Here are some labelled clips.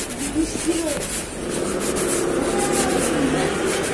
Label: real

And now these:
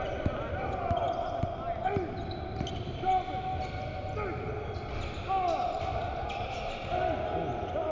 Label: real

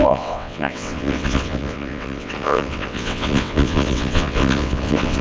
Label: fake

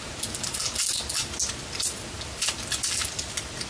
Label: real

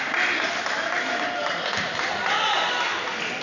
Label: real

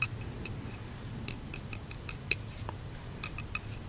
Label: real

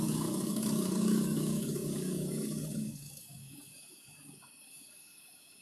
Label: fake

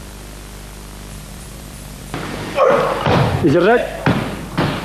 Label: fake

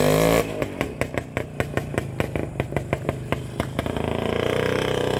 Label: real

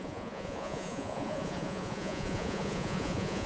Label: fake